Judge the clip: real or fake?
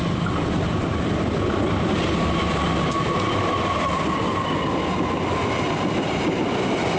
real